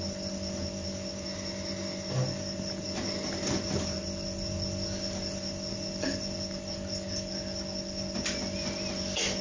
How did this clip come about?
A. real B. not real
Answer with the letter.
A